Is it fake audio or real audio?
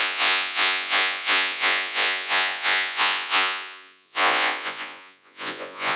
fake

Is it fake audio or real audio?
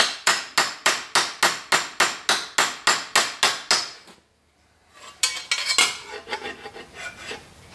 real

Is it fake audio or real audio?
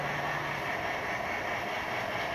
real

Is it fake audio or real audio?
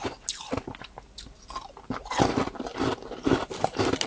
real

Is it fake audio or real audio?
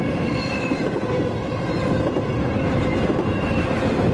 real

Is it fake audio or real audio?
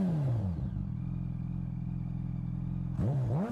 real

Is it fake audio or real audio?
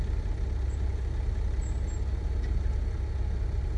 real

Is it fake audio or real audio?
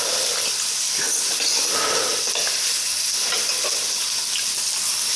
real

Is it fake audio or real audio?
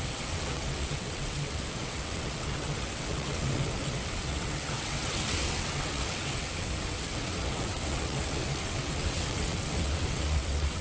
fake